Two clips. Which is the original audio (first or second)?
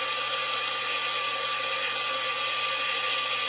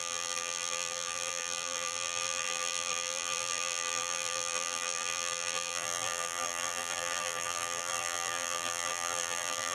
first